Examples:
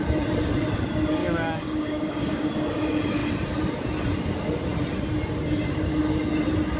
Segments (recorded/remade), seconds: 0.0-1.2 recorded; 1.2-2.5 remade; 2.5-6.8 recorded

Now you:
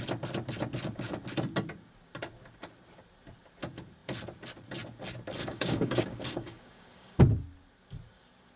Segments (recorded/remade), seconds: 0.0-5.4 recorded; 5.4-7.2 remade; 7.2-8.6 recorded

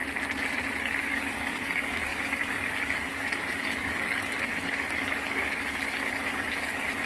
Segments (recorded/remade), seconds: 0.0-0.8 recorded; 0.8-7.1 remade

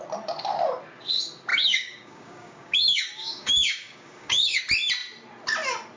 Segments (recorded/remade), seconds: 0.0-1.5 recorded; 1.5-4.6 remade; 4.6-6.0 recorded

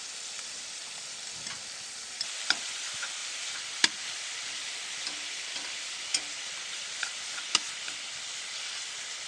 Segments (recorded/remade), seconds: 0.0-9.3 recorded